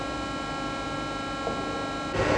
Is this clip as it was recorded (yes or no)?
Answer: yes